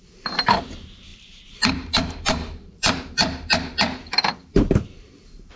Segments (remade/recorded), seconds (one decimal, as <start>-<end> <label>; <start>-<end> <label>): 0.0-5.6 remade